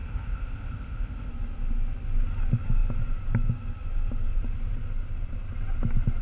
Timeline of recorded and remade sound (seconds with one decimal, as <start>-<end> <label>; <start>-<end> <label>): 0.0-1.3 remade; 1.3-6.2 recorded